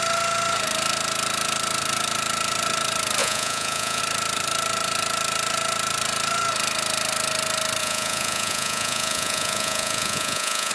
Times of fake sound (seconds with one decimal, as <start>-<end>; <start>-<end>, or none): 3.2-4.0; 7.8-10.7